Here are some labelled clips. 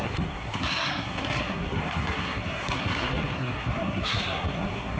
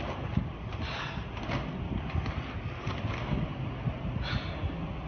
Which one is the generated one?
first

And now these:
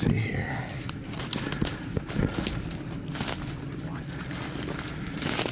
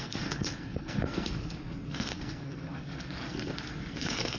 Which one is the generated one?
second